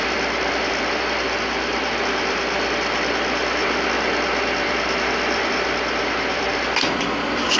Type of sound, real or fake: fake